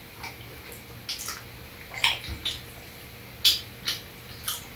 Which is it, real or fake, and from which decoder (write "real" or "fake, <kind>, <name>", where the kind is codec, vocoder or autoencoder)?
real